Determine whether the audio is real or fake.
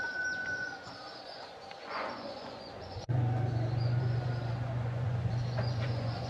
fake